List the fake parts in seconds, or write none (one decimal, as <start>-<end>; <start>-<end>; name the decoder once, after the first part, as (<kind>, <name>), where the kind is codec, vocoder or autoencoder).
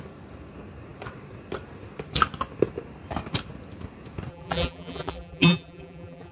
4.3-6.3 (vocoder, BigVGAN v2)